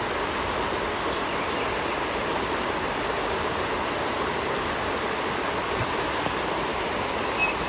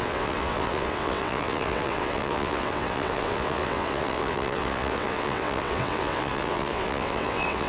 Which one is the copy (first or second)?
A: second